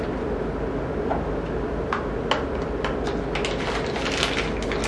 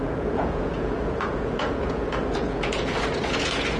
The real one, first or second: first